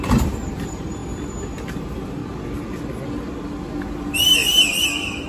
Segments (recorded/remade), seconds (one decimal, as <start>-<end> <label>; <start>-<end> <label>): 0.0-1.0 remade; 1.0-1.8 recorded; 1.8-2.2 remade; 2.2-4.0 recorded; 4.0-5.3 remade